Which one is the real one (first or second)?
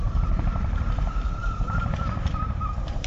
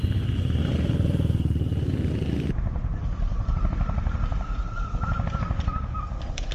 second